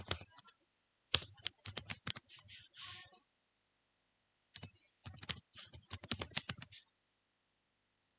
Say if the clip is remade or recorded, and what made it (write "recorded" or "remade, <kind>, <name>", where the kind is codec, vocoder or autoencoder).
recorded